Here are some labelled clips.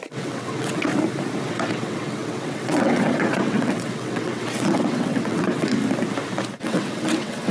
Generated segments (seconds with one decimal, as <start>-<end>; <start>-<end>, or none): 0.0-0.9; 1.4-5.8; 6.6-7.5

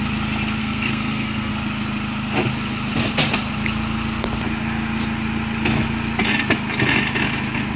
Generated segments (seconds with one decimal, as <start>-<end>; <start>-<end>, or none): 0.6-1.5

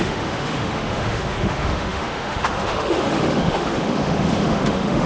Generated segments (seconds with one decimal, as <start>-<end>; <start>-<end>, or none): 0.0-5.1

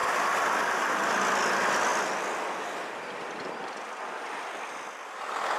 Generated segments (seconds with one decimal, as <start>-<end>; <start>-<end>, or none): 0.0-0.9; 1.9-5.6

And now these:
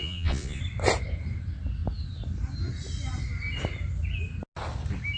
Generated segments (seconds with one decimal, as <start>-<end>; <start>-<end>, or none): 0.0-0.6